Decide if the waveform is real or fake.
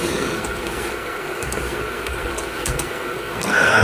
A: fake